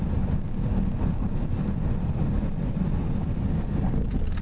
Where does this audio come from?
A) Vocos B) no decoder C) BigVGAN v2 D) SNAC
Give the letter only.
B